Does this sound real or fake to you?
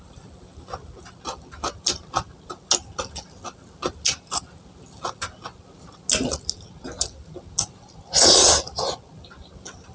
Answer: real